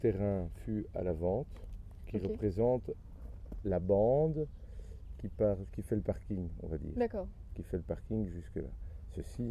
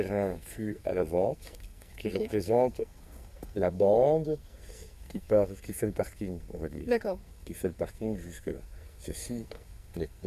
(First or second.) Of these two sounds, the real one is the first